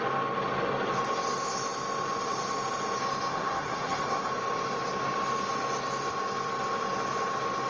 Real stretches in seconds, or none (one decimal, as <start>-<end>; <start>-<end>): 0.0-3.3; 4.3-7.7